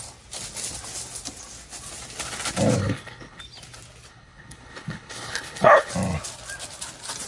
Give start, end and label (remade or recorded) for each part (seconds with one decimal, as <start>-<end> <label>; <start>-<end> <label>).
0.0-2.8 recorded; 2.8-3.4 remade; 3.4-4.1 recorded; 4.1-5.9 remade; 5.9-7.3 recorded